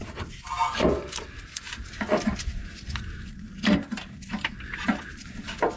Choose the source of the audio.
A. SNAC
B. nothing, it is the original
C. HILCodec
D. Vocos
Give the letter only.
B